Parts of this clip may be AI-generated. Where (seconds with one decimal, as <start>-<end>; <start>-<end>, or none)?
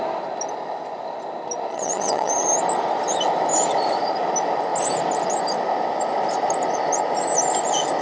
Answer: 1.7-2.3